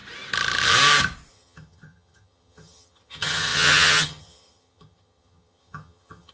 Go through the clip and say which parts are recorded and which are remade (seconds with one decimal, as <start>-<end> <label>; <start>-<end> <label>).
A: 0.0-1.3 recorded; 1.3-6.3 remade